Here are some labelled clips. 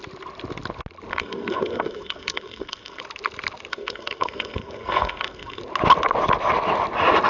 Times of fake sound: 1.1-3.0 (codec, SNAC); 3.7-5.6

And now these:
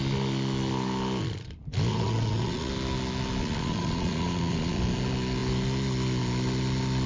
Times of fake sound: 1.9-2.7 (vocoder, Vocos); 3.4-4.8

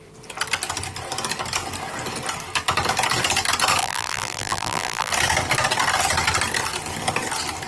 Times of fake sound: 3.8-5.1 (vocoder, BigVGAN v2)

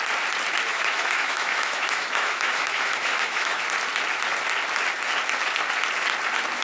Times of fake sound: 0.7-3.6 (autoencoder, DAC-VAE)

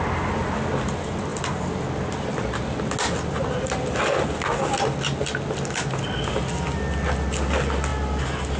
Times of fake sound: none

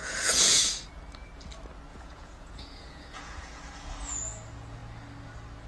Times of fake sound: 0.0-0.8 (vocoder, Vocos); 1.9-3.7

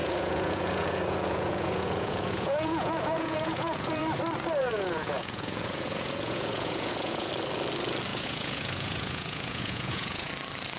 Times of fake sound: 0.0-4.0 (vocoder, Vocos); 4.6-7.3; 8.1-10.3

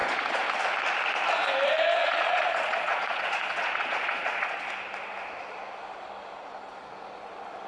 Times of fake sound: 0.0-0.5 (vocoder, Vocos); 2.0-4.6